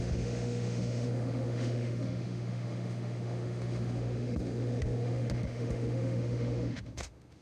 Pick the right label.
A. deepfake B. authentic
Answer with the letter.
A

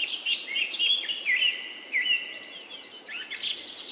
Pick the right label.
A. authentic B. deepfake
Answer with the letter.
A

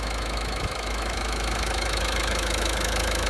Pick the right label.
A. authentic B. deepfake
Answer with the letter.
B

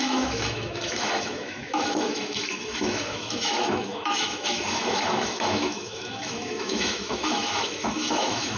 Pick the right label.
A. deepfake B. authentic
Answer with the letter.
A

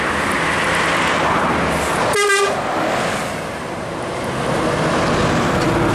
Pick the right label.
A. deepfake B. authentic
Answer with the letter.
B